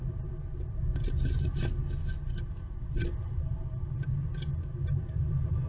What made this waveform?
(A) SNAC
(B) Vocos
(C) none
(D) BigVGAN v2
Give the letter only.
C